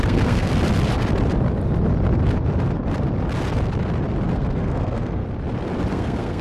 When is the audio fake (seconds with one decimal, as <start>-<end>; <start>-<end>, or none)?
0.0-0.5; 4.3-5.2; 5.9-6.4